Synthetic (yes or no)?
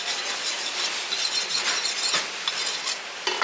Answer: no